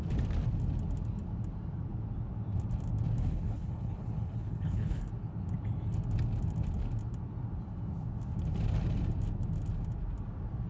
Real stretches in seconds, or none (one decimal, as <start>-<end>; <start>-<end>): 0.0-3.2; 5.0-10.7